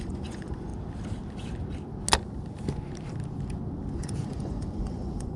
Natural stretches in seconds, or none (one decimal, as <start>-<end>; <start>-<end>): 0.7-3.9